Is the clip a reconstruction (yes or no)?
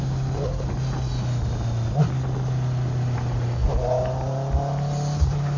no